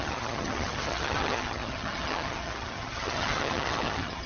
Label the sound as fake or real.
fake